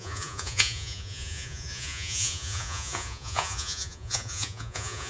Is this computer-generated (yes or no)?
yes